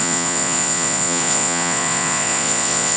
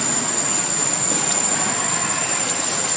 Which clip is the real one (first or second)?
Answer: second